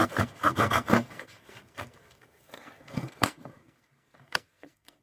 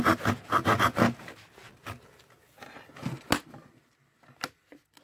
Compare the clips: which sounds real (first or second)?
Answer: second